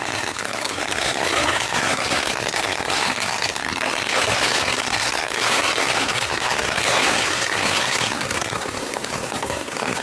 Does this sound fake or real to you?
fake